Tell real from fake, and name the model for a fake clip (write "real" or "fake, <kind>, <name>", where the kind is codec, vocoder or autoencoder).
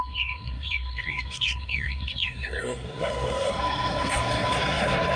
fake, codec, SNAC